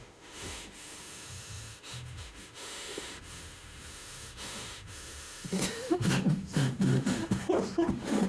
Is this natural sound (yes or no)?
no